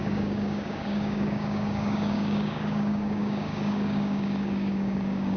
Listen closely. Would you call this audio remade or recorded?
remade